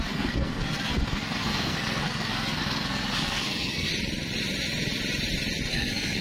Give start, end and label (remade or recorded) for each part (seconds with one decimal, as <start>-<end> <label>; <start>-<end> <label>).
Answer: 0.0-3.9 remade; 3.9-5.7 recorded; 5.7-6.2 remade